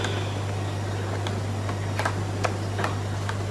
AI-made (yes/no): no